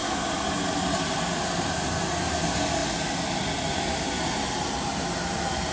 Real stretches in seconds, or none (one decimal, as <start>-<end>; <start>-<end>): 0.0-5.7